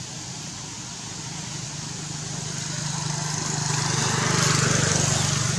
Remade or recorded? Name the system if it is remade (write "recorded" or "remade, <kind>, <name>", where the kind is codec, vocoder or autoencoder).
recorded